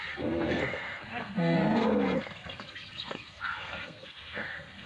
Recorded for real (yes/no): no